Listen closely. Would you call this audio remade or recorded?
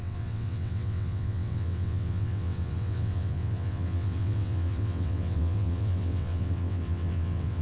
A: remade